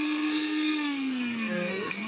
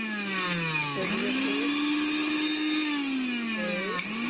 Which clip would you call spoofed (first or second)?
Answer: first